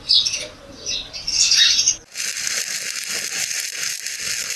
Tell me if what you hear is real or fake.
real